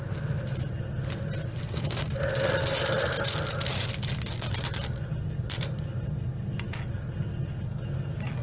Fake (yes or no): no